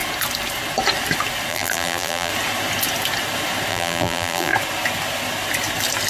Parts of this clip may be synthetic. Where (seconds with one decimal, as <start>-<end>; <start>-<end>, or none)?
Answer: 1.5-2.3; 3.7-4.5